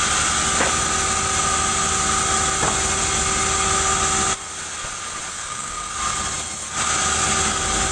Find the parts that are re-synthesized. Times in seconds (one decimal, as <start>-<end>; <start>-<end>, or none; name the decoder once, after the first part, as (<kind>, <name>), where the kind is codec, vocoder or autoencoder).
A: 5.3-5.9 (codec, SNAC)